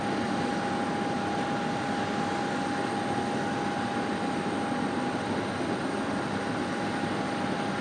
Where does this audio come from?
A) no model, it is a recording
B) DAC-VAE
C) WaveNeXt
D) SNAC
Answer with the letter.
A